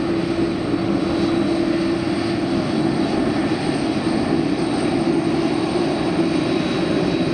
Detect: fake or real real